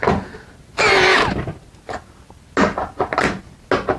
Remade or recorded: recorded